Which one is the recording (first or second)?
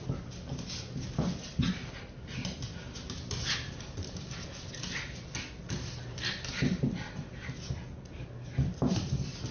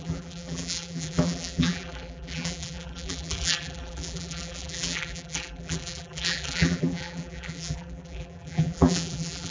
first